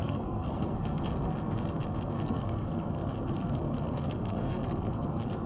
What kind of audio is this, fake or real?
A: fake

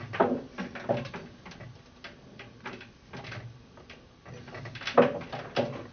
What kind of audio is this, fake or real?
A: real